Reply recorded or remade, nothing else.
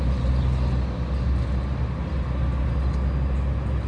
recorded